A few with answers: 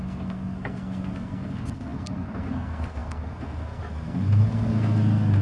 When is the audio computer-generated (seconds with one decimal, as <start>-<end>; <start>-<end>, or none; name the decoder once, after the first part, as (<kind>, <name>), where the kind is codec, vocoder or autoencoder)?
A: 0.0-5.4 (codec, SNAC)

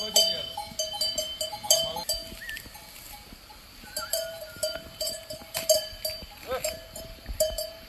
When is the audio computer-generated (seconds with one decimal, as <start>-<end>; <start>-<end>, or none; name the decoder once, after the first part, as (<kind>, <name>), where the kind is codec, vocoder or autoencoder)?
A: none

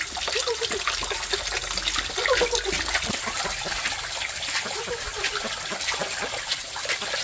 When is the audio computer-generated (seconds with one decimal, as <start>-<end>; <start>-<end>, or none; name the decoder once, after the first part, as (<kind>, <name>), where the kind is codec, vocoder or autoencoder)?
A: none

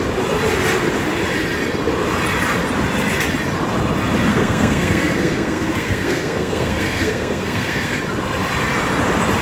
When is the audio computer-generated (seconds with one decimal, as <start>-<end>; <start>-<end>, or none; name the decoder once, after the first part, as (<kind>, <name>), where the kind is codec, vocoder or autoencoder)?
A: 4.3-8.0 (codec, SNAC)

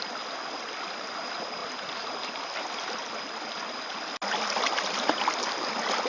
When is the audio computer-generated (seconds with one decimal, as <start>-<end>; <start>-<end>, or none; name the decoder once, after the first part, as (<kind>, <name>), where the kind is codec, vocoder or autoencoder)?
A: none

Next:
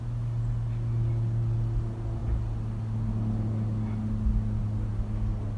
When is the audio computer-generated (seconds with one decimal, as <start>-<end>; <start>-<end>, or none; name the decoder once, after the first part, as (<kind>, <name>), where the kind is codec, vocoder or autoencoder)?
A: none

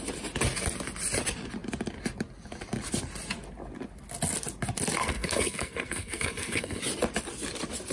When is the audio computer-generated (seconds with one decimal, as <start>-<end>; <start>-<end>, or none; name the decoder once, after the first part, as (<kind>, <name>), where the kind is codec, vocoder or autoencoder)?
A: 5.0-6.8 (codec, SNAC)

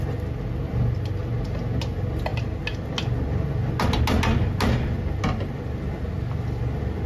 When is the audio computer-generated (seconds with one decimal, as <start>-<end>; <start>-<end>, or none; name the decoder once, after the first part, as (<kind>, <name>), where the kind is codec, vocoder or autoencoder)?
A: none